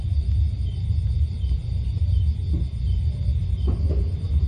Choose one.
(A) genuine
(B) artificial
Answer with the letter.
A